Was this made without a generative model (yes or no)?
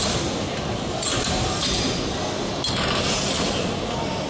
yes